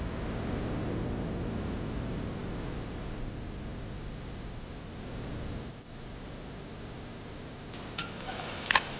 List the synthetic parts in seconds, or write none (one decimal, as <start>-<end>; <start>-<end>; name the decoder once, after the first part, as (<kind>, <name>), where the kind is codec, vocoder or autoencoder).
8.0-9.0 (autoencoder, DAC-VAE)